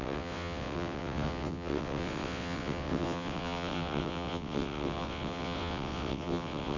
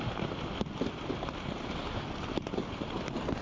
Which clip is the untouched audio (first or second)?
second